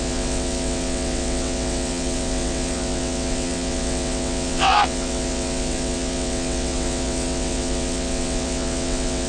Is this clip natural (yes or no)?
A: no